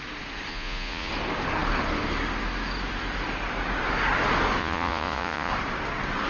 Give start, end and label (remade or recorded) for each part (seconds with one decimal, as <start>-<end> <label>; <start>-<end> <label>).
0.0-0.5 recorded; 0.5-1.1 remade; 1.1-4.6 recorded; 4.6-5.5 remade; 5.5-6.3 recorded